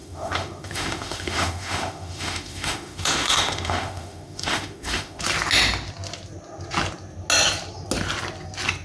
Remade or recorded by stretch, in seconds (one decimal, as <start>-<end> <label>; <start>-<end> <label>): 0.0-5.2 remade; 5.2-8.8 recorded